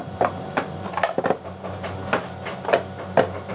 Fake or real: real